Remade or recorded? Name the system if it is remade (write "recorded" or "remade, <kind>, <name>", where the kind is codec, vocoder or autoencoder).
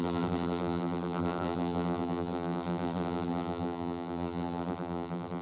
remade, vocoder, BigVGAN v2